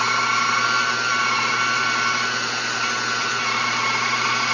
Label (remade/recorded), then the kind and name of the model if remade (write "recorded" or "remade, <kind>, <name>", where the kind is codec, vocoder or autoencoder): recorded